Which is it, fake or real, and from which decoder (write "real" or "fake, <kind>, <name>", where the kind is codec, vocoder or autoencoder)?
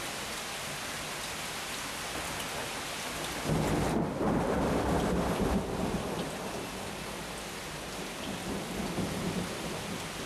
real